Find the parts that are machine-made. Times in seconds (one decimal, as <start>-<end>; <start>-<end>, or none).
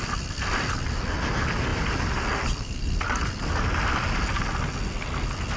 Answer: 1.7-3.7